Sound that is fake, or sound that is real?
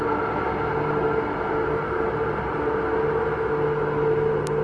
real